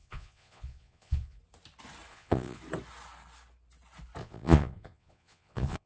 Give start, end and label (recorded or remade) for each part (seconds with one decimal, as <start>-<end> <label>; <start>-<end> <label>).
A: 0.0-1.4 remade; 1.4-2.1 recorded; 2.1-2.6 remade; 2.6-4.2 recorded; 4.2-5.9 remade